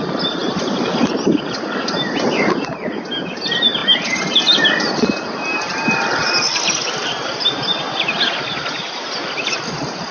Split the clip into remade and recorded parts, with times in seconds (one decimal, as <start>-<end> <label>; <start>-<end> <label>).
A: 0.0-10.1 recorded